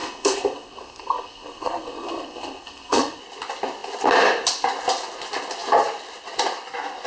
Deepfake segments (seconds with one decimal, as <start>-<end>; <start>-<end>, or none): 0.0-3.2